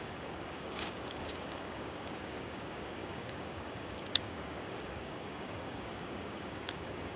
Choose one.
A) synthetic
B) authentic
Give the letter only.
A